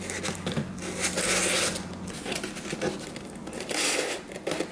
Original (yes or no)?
yes